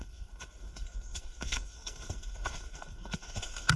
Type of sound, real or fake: fake